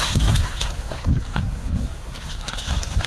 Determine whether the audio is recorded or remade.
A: remade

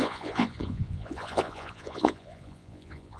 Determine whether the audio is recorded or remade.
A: remade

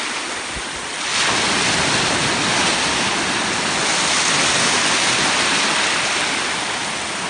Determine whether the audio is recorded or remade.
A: recorded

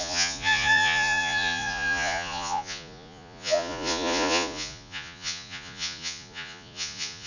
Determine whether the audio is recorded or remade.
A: remade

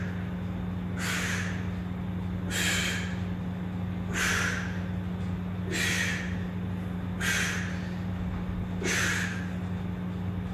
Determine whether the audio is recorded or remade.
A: recorded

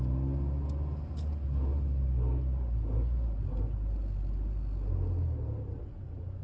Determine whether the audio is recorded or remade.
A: recorded